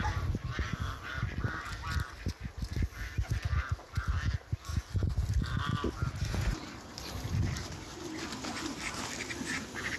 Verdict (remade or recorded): recorded